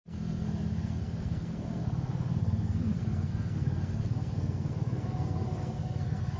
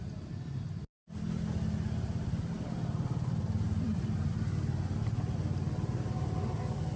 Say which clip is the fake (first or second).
first